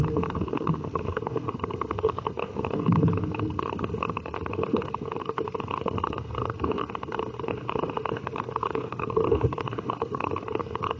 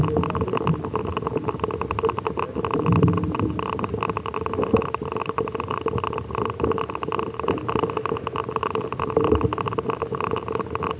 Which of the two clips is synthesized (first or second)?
first